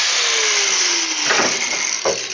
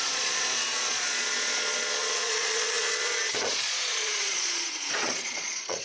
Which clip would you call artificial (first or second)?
second